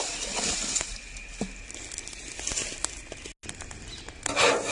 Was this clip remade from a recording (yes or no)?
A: no